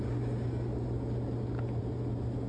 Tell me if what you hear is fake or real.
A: real